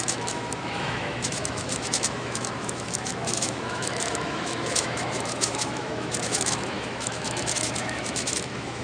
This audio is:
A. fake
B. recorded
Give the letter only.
A